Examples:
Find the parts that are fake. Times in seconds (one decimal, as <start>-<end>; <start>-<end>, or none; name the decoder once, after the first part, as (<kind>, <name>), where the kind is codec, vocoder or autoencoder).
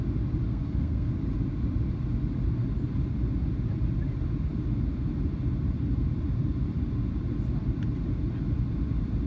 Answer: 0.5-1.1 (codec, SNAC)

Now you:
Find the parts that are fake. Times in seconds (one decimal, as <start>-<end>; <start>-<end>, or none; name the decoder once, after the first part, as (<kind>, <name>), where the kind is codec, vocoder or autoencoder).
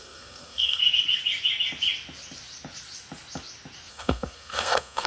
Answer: 0.0-0.8 (codec, SNAC); 3.9-5.1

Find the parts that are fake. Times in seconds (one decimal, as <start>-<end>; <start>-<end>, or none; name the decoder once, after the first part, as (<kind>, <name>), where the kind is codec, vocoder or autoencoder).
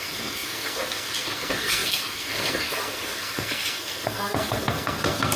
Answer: 0.0-5.4 (codec, SNAC)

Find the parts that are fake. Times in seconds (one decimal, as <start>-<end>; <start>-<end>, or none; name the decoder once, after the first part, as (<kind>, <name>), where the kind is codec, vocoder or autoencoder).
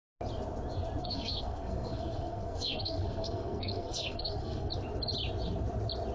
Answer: 1.0-4.7 (codec, SNAC)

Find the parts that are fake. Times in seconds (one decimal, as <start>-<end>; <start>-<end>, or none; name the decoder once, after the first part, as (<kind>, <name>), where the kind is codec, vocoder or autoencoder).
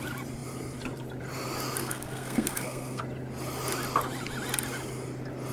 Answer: 1.8-3.0 (codec, SNAC)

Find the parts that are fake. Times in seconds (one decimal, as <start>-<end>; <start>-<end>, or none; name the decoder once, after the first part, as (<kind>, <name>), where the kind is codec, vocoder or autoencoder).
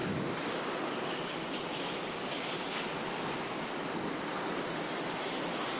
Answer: none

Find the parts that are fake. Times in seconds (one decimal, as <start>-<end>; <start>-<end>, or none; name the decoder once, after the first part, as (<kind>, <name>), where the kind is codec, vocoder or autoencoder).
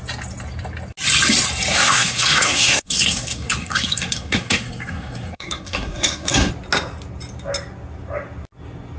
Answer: 1.7-6.5 (codec, SNAC)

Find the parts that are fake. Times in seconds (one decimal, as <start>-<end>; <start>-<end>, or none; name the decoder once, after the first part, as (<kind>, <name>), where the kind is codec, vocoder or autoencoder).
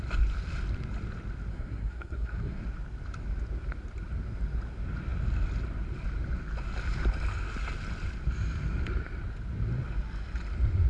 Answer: 1.5-2.6 (codec, SNAC)